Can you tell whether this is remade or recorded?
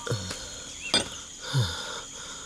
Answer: recorded